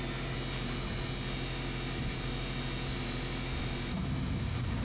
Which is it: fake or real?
real